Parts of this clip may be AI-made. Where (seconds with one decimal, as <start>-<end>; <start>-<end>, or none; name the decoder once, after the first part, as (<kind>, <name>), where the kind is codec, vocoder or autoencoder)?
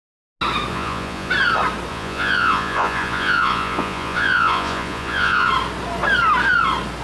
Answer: 0.7-1.3 (vocoder, Vocos); 1.9-5.5